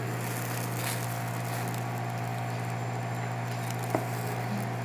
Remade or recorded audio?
recorded